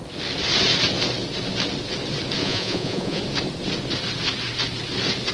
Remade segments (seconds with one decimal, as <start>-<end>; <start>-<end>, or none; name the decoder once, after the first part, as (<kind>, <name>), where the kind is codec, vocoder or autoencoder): 2.4-3.2 (vocoder, Vocos)